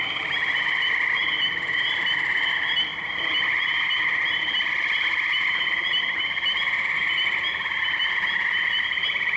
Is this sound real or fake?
real